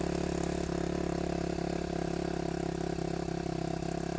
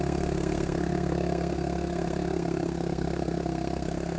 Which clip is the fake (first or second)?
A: second